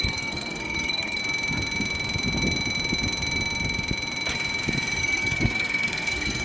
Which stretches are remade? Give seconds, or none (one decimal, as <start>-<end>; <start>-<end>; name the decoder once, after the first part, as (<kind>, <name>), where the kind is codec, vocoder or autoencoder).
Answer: 0.0-1.2 (codec, SNAC); 5.0-6.4